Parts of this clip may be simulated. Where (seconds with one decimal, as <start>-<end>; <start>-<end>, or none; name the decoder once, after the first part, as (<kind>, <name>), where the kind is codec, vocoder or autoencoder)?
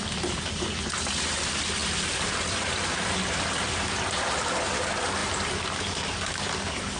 1.8-4.1 (vocoder, BigVGAN v2)